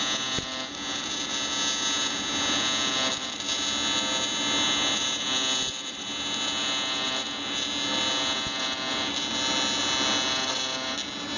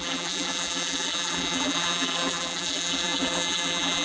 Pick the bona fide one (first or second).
first